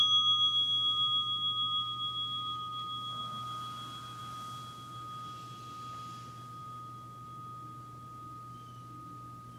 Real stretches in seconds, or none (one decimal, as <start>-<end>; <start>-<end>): 0.0-9.6